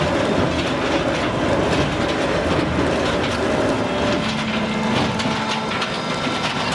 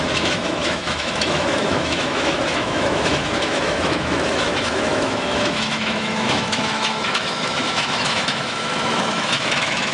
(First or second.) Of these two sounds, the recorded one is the first